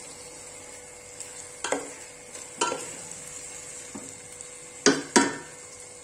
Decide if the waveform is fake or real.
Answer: real